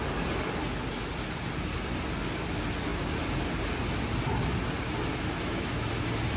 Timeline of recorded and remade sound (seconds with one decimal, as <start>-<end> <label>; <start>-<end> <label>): 0.0-5.1 recorded; 5.1-5.9 remade; 5.9-6.4 recorded